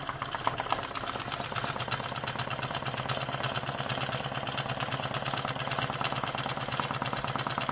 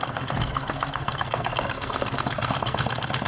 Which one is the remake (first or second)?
second